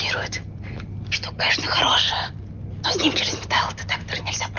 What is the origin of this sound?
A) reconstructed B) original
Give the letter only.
B